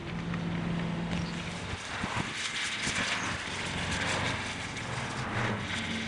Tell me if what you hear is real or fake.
real